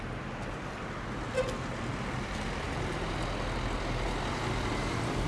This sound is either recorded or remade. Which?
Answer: recorded